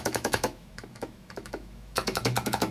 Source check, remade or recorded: remade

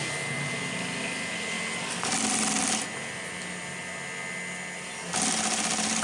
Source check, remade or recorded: recorded